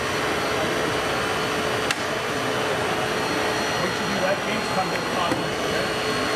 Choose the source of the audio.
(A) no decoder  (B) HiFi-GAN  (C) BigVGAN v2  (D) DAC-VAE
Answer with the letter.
A